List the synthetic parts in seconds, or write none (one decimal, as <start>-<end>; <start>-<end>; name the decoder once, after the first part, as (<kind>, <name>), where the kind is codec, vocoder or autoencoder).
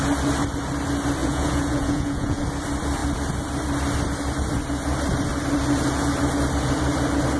1.2-2.4 (vocoder, Vocos)